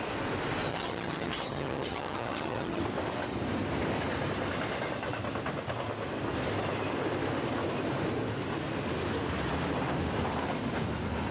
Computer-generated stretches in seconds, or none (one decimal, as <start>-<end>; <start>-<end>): 0.7-2.8